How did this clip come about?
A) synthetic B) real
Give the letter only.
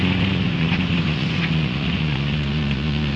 A